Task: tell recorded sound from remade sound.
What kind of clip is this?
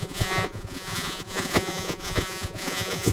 remade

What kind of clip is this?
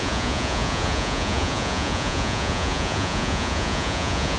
remade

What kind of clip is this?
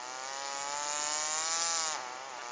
recorded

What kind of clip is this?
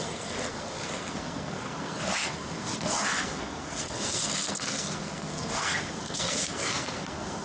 remade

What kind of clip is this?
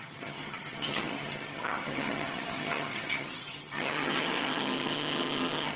remade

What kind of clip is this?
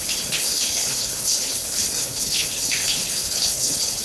remade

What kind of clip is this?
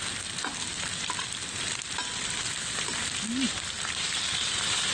recorded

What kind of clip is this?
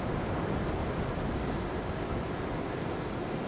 recorded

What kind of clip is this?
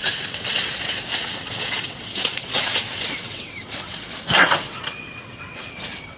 remade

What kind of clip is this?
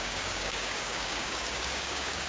remade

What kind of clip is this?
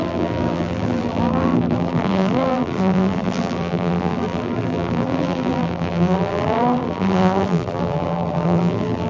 remade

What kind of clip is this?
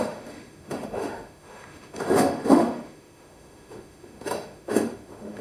remade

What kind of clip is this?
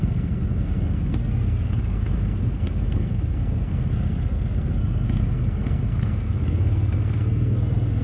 remade